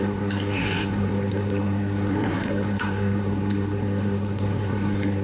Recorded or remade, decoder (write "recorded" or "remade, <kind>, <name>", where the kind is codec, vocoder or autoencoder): remade, codec, SNAC